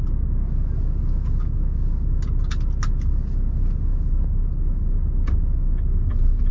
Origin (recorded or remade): recorded